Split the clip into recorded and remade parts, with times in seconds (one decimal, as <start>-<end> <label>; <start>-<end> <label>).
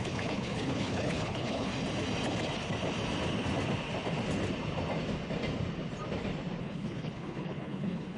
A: 0.0-1.7 remade; 1.7-6.6 recorded; 6.6-8.2 remade